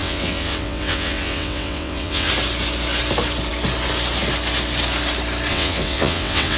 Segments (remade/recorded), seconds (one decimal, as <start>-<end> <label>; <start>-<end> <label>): 0.0-2.3 remade; 2.3-5.5 recorded; 5.5-6.6 remade